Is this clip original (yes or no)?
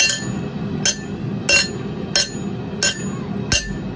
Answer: yes